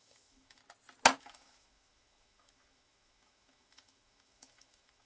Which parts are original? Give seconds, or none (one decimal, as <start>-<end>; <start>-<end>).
0.6-1.2